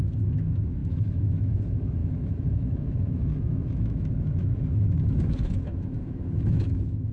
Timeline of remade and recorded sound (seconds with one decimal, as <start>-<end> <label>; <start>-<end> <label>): 0.0-7.1 remade